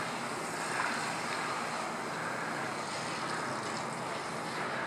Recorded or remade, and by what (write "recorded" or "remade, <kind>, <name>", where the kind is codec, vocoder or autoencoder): recorded